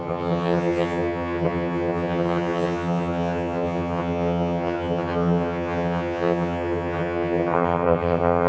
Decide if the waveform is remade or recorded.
remade